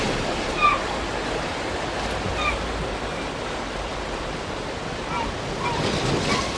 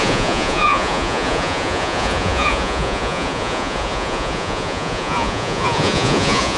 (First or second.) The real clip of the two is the first